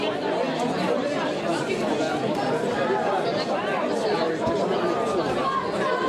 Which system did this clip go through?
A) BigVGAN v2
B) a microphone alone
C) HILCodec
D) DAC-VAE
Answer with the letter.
B